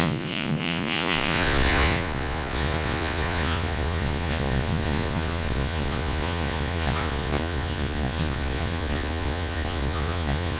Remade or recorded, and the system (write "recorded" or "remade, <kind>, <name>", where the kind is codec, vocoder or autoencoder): remade, vocoder, Vocos